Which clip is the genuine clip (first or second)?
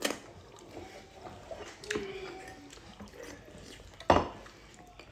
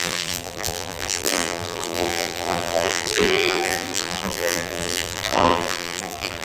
first